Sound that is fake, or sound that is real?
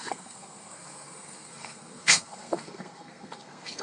fake